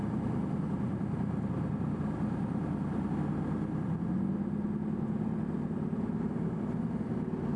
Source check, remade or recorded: recorded